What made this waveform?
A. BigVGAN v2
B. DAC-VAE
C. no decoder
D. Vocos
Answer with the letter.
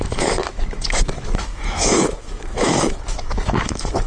B